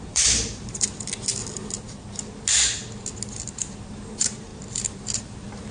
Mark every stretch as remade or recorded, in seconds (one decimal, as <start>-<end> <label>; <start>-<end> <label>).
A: 0.0-0.9 remade; 0.9-3.4 recorded; 3.4-5.7 remade